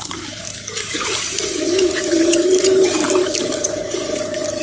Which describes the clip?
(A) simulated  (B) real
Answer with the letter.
A